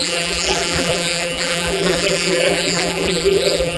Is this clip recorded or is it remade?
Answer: remade